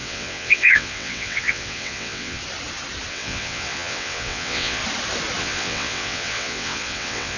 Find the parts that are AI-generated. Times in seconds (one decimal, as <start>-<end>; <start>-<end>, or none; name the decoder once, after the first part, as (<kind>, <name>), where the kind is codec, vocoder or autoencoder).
0.0-2.4 (vocoder, WaveNeXt); 3.1-4.8; 5.4-7.4